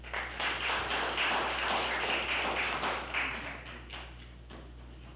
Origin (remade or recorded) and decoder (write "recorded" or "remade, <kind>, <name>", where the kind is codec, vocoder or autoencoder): recorded